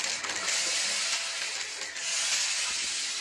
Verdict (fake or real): real